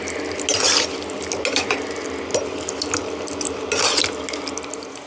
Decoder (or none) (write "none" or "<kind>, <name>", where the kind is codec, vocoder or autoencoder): none